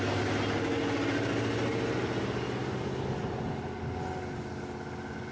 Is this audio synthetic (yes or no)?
no